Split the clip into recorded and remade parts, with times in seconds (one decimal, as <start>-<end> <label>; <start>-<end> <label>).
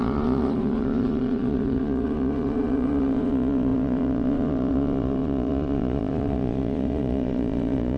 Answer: 0.0-8.0 remade